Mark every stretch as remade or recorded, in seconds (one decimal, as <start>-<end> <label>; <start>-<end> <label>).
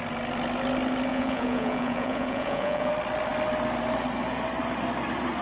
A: 0.0-1.1 recorded; 1.1-2.9 remade; 2.9-5.4 recorded